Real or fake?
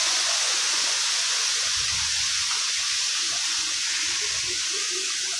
fake